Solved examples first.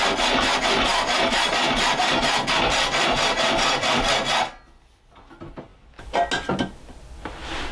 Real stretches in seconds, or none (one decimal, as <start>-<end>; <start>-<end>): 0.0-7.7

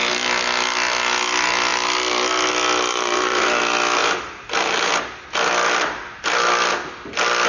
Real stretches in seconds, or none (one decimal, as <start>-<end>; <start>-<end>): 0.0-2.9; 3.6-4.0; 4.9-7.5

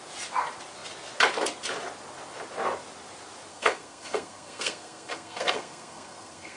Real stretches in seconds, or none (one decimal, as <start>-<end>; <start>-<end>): 0.0-3.5